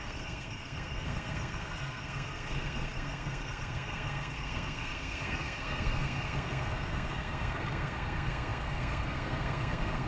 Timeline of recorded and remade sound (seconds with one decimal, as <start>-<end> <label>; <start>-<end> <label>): 0.0-10.1 remade